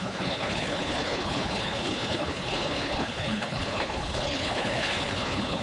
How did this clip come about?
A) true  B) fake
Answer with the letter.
B